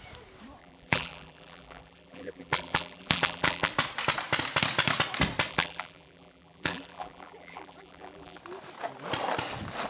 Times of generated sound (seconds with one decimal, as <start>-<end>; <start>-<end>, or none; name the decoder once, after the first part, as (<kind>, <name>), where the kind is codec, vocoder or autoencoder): 0.6-3.7 (vocoder, BigVGAN v2); 5.5-8.4